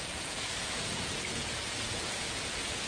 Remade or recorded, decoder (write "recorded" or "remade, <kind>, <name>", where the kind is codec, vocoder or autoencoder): remade, vocoder, Vocos